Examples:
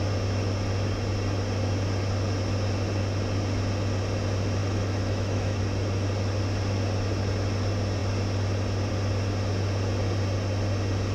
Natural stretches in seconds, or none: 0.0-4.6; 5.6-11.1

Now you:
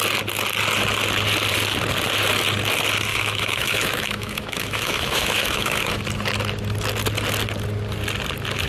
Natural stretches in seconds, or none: 0.0-3.1; 6.0-8.7

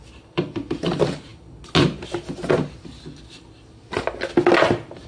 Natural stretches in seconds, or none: 0.0-5.1